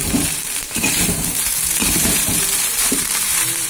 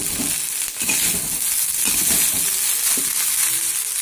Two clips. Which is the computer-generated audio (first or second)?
first